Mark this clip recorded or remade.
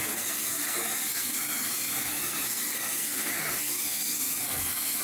remade